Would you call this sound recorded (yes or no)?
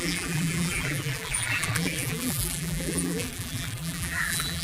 no